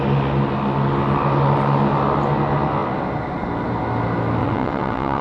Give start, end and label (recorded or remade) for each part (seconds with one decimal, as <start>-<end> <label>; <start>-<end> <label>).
0.0-4.4 recorded; 4.4-5.2 remade